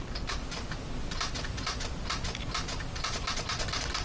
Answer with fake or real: real